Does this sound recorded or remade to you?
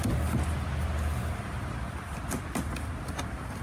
recorded